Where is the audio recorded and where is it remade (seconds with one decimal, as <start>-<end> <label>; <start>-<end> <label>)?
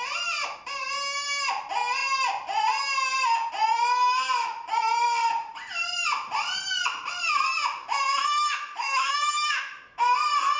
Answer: 0.0-8.1 recorded; 8.1-10.0 remade; 10.0-10.6 recorded